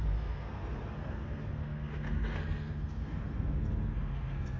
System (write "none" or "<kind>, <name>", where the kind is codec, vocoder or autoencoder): codec, SNAC